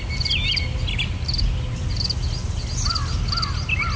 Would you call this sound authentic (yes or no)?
yes